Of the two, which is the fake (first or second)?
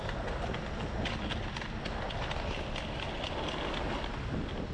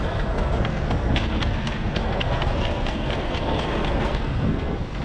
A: second